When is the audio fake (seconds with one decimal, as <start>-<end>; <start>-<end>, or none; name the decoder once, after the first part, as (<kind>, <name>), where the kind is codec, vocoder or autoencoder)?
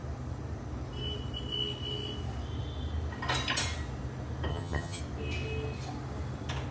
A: 4.5-5.0 (vocoder, HiFi-GAN)